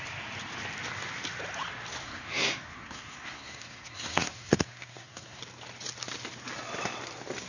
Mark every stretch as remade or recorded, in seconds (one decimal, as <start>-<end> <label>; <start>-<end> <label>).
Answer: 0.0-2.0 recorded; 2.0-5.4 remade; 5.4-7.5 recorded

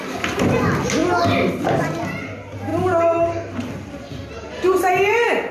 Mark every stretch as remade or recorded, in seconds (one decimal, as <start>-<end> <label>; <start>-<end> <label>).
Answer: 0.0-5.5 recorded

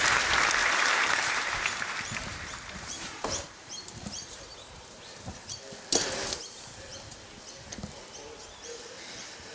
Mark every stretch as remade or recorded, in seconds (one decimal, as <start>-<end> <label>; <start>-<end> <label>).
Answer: 0.0-0.6 recorded; 0.6-5.6 remade; 5.6-9.5 recorded

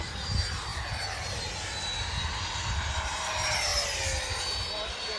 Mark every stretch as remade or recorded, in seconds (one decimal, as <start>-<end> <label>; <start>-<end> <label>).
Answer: 0.0-5.2 recorded